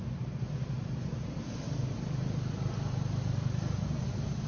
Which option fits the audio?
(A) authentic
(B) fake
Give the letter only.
A